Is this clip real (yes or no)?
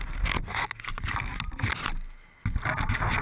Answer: yes